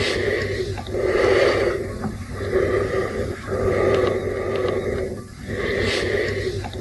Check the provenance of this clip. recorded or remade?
recorded